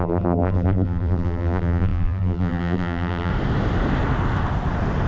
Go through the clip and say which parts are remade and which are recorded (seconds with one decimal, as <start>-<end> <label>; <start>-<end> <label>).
0.0-3.3 remade; 3.3-5.1 recorded